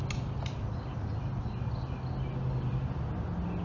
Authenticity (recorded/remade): recorded